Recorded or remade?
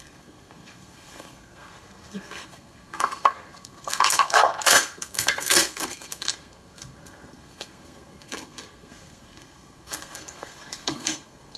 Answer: remade